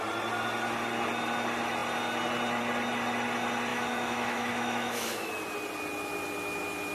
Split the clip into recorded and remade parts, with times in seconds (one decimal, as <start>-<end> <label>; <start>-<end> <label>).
0.0-3.7 recorded; 3.7-5.3 remade; 5.3-6.9 recorded